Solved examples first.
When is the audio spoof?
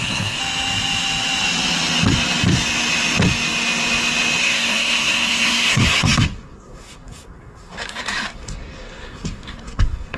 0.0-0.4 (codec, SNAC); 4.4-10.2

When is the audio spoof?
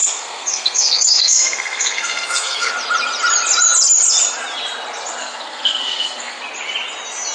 0.0-2.7 (codec, SNAC); 5.2-6.4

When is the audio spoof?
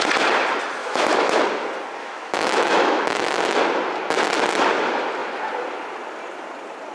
0.8-1.4 (autoencoder, DAC-VAE); 2.0-3.6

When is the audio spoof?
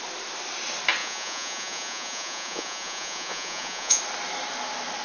1.0-4.0 (vocoder, Vocos)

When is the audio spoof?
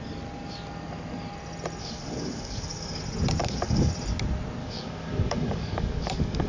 1.8-3.0 (codec, DAC); 3.4-3.9; 4.6-6.5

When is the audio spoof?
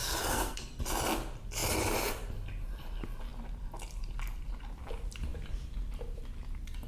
0.0-0.7 (codec, SNAC)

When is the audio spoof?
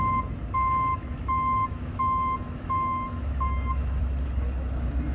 0.9-4.0 (autoencoder, DAC-VAE)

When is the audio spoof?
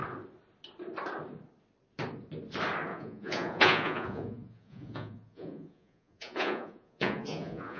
2.9-7.8 (vocoder, Vocos)